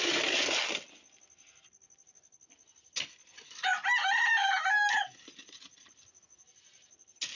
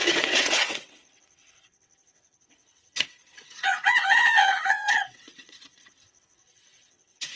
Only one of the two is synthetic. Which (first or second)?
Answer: second